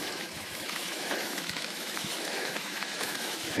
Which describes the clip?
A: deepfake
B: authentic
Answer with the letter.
A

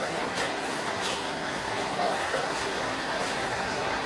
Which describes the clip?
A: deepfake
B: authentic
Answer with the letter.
A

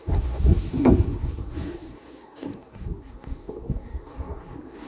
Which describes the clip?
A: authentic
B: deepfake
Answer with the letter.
B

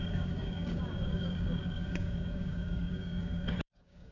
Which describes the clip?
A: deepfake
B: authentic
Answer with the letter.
A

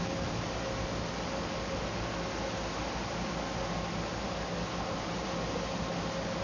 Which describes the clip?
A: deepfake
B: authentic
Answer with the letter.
B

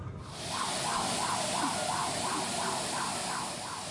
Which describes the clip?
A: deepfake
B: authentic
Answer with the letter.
B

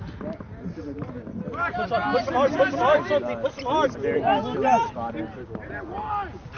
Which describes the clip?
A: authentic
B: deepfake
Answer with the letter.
A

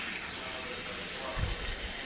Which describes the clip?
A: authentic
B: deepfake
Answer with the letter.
A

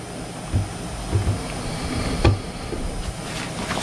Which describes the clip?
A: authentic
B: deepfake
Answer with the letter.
A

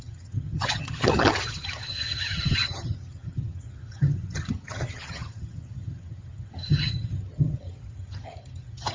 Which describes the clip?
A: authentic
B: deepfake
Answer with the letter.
B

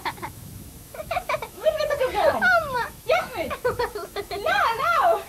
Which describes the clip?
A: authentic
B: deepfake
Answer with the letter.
B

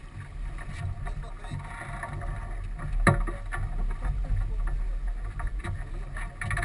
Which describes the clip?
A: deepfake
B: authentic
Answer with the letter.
B